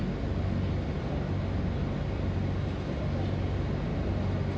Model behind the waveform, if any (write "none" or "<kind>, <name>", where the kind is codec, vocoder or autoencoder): none